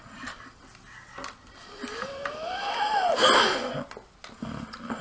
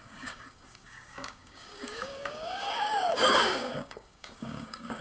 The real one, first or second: first